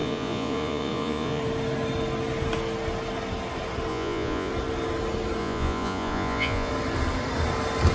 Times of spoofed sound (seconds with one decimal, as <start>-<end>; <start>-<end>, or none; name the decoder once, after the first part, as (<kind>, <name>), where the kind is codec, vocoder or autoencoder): 0.0-1.4 (vocoder, Vocos); 3.9-4.5; 5.4-6.7